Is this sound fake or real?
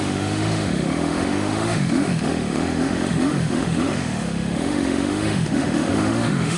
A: fake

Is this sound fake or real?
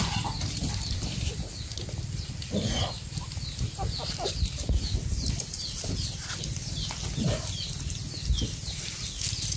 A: real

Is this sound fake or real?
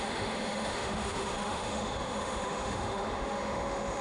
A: fake